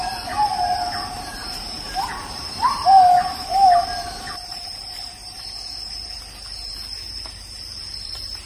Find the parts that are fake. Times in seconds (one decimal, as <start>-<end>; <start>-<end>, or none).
0.0-0.5; 1.1-8.5

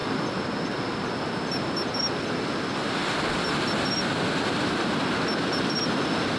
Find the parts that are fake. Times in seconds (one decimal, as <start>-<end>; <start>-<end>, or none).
none

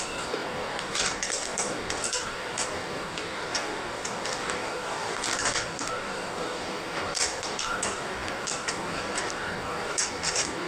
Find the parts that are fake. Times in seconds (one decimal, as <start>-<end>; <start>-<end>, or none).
0.0-10.7

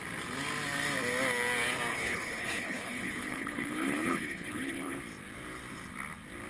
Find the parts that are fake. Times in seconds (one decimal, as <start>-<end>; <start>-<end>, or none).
1.9-5.0

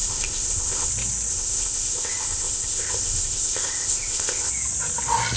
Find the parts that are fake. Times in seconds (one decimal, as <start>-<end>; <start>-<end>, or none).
0.0-0.9; 1.3-4.5

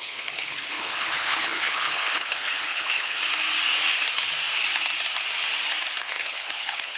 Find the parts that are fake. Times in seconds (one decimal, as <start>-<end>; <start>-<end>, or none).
0.0-3.2; 6.0-7.0

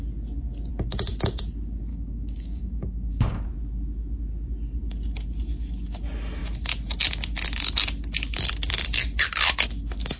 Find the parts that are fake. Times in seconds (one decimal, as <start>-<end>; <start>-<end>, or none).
1.9-3.4

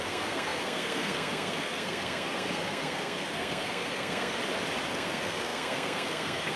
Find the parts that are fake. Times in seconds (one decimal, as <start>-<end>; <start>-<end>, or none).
0.0-4.4; 4.9-6.6